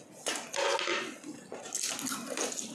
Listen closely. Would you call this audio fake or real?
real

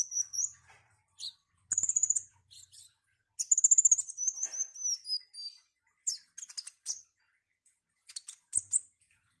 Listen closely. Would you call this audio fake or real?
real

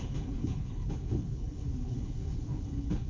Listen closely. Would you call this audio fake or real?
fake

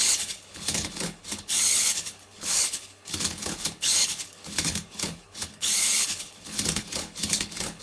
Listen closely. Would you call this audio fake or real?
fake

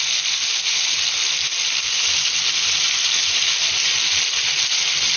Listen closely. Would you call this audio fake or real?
real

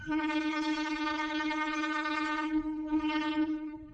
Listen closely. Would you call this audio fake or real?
fake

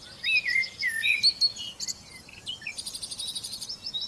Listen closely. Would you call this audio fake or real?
real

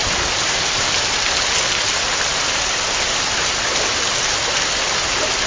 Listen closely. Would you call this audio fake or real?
real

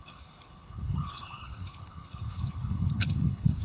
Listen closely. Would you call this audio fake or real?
fake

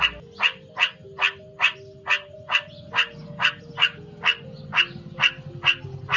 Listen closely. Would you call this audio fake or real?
real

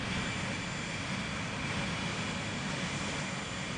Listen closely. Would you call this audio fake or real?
real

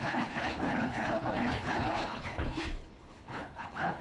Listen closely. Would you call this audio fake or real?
fake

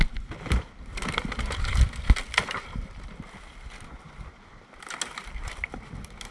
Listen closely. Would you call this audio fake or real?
real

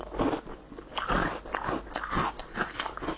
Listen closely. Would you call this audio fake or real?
real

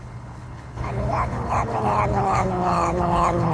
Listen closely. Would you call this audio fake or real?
fake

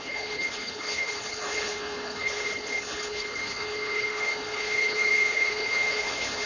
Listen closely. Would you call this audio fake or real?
fake